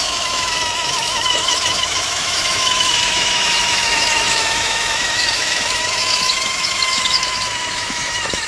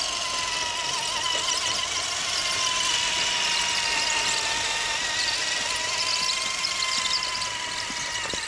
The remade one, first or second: first